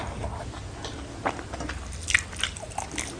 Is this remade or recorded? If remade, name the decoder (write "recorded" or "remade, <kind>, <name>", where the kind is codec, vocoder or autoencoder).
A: recorded